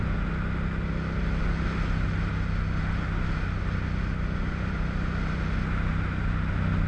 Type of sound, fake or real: real